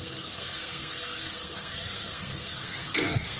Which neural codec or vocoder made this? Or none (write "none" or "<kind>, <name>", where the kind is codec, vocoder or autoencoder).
codec, SNAC